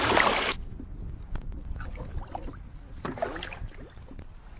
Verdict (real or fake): real